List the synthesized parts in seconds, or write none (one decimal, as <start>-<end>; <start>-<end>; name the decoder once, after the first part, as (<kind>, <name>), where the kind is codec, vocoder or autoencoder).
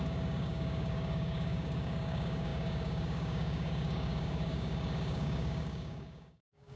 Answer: 0.0-6.8 (codec, DAC)